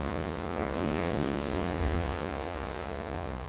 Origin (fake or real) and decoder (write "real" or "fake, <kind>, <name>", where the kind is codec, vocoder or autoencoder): fake, vocoder, Vocos